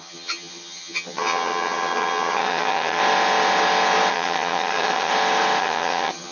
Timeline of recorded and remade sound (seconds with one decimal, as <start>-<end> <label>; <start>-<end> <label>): 0.0-3.0 remade; 3.0-4.1 recorded; 4.1-5.1 remade; 5.1-5.6 recorded; 5.6-6.3 remade